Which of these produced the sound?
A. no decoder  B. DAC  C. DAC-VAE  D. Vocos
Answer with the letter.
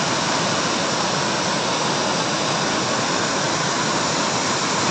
A